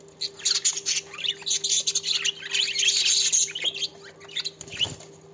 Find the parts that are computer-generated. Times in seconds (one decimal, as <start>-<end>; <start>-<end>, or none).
none